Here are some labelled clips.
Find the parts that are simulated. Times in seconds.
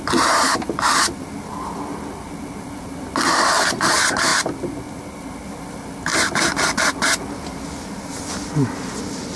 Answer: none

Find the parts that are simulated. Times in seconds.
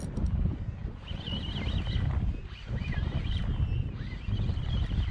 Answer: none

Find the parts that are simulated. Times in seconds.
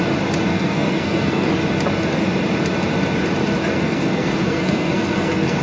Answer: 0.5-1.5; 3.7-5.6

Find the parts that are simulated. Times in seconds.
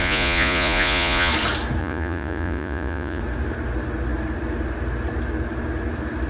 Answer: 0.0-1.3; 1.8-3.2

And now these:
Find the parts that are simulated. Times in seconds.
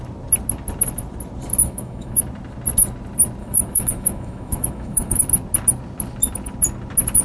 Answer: 1.6-2.2; 3.4-5.2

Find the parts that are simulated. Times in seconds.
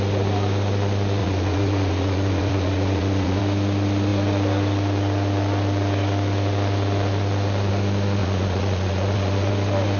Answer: 1.2-3.4; 8.2-9.5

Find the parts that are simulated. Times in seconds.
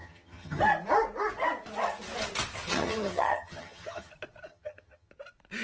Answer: 0.0-0.6; 2.7-4.1; 4.5-5.1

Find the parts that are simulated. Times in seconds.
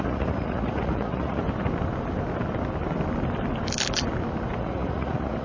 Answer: 0.0-1.4; 4.6-5.4